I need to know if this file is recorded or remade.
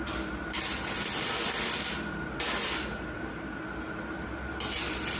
recorded